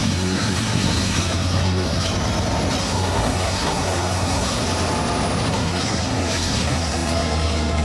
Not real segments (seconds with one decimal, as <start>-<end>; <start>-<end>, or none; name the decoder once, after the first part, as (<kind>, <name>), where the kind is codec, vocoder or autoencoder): 0.0-2.1 (codec, SNAC); 2.8-4.6; 5.5-7.8